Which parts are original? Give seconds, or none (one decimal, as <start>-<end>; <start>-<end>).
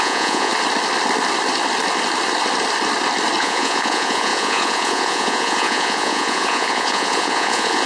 0.5-3.4